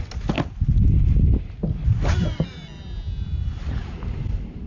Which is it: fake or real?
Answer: real